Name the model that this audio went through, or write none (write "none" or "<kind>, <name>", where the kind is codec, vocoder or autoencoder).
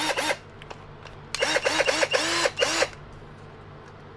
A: none